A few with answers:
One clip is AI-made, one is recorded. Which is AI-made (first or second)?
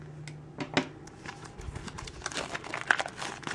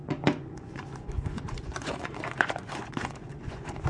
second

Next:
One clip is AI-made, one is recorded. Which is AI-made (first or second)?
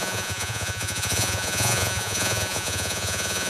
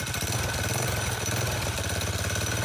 first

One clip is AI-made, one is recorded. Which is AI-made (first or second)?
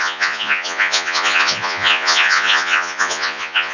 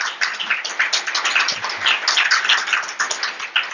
first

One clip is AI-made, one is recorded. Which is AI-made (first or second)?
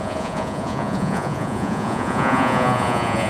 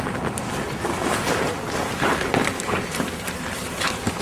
first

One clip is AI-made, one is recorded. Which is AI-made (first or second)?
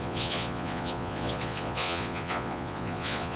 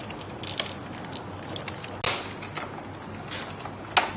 first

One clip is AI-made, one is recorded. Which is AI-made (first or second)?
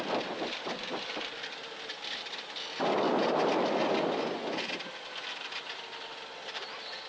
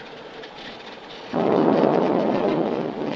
second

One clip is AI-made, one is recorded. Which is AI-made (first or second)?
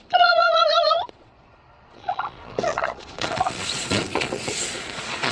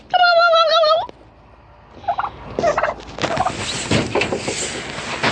first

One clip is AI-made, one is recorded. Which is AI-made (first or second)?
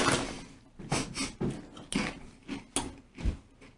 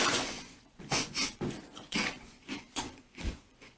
second